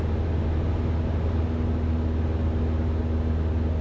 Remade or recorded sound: recorded